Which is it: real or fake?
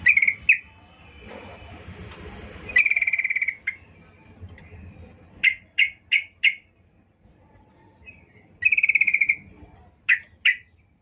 real